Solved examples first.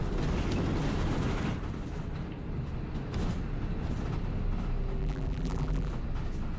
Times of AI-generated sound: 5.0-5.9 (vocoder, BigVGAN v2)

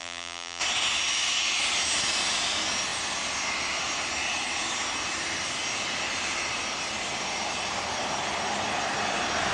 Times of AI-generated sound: 0.0-0.6 (vocoder, BigVGAN v2)

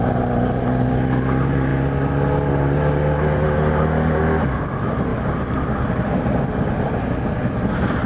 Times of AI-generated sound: none

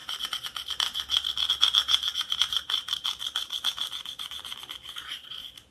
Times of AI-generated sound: 2.1-4.6 (vocoder, BigVGAN v2)

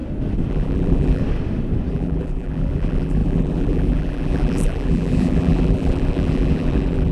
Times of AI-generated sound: 0.5-1.2 (vocoder, BigVGAN v2); 1.9-7.1

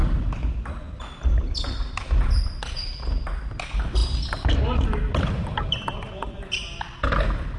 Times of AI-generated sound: none